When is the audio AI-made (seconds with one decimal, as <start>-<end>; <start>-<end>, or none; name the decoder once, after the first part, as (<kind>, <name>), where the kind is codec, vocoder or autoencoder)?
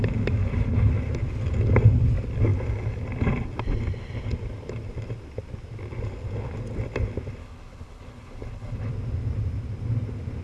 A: 0.4-0.9 (codec, HILCodec); 7.4-8.9